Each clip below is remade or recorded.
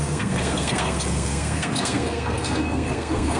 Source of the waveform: remade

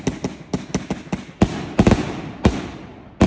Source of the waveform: recorded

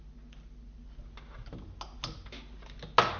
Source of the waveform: recorded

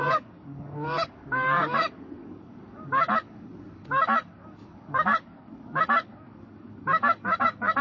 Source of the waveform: remade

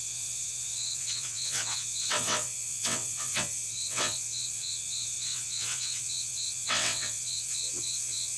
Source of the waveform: remade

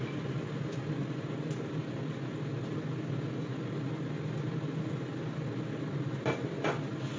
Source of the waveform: recorded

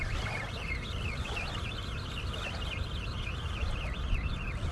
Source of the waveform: recorded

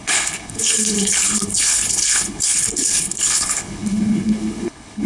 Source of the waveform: remade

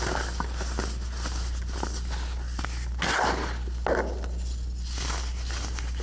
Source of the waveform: recorded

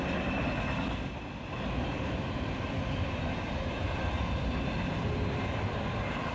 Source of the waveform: recorded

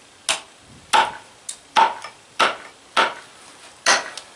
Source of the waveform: recorded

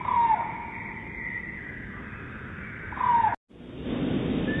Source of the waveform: recorded